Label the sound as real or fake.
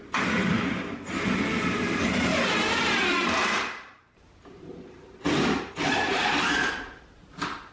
fake